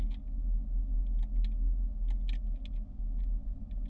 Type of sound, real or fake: real